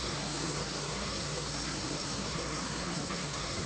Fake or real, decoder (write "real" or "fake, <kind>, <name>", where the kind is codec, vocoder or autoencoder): fake, codec, SNAC